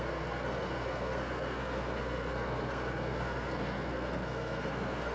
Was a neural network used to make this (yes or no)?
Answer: yes